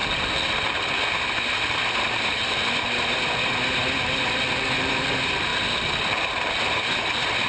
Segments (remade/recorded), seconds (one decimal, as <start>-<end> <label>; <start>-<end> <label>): 0.0-7.5 recorded